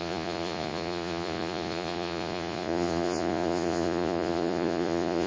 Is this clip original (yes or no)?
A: no